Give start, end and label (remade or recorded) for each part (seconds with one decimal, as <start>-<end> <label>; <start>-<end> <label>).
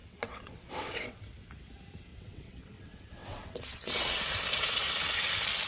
0.0-1.2 remade; 1.2-2.1 recorded; 2.1-5.3 remade; 5.3-5.7 recorded